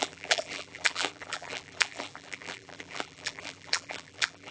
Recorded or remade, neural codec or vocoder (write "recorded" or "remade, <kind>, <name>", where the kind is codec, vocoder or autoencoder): remade, vocoder, BigVGAN v2